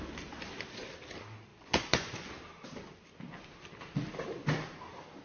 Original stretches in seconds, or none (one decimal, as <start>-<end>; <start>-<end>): 0.0-1.5; 2.3-5.2